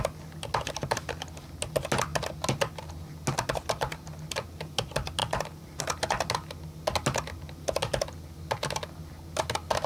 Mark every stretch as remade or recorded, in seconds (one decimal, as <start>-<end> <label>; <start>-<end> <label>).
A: 0.0-9.9 recorded